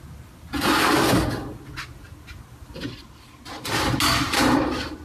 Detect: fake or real real